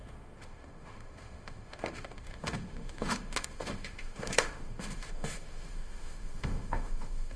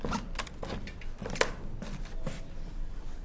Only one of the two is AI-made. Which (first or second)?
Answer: first